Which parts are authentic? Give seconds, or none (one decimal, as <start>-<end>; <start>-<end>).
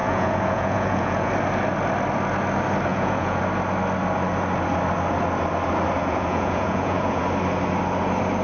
1.3-2.9; 3.4-6.0; 7.2-8.4